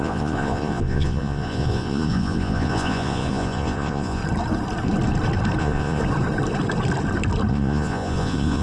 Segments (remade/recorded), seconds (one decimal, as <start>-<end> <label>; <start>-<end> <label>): 0.0-4.2 remade; 4.2-5.6 recorded; 5.6-6.0 remade; 6.0-7.5 recorded; 7.5-8.6 remade